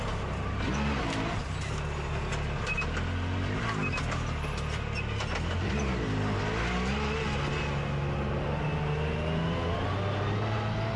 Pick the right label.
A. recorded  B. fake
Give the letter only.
A